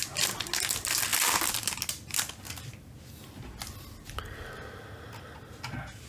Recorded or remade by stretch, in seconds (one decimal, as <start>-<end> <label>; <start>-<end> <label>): 0.0-6.1 recorded